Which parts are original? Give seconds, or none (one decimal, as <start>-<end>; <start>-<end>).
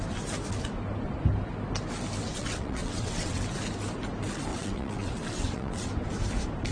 0.0-2.3; 3.4-4.5; 5.9-6.7